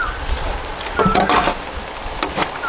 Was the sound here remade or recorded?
recorded